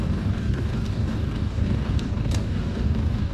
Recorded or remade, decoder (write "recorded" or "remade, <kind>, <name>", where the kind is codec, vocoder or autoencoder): remade, codec, DAC